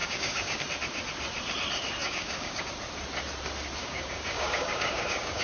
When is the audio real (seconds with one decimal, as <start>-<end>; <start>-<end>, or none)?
0.6-2.0; 2.7-3.8